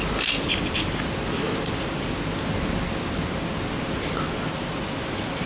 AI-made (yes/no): no